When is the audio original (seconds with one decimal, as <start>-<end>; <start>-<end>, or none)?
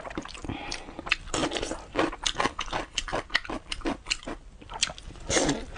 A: 0.0-5.8